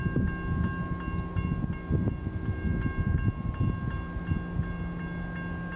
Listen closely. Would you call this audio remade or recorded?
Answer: recorded